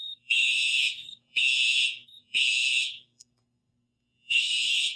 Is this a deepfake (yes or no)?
yes